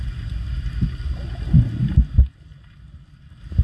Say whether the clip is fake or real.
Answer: real